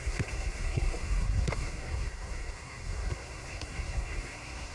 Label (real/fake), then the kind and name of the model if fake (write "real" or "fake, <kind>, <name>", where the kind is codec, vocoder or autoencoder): fake, codec, SNAC